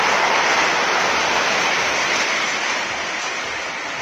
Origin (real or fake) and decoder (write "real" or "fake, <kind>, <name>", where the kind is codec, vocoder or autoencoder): real